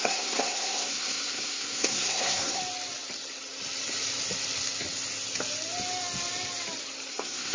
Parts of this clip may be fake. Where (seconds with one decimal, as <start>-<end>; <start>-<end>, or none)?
0.0-2.6; 7.1-7.5